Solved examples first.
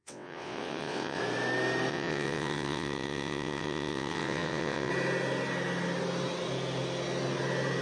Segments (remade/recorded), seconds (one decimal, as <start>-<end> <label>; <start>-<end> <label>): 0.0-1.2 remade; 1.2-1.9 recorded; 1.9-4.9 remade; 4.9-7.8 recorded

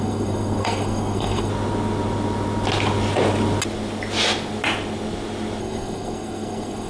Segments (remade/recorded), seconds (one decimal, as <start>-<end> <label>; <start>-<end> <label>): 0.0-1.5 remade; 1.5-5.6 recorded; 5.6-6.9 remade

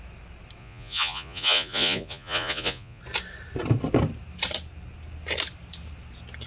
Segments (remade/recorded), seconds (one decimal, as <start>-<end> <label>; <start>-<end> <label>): 0.0-0.6 recorded; 0.6-3.0 remade; 3.0-6.5 recorded